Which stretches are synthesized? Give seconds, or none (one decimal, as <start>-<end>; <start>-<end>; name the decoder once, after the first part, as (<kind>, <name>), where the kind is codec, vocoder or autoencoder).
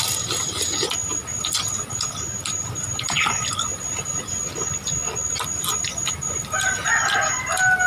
none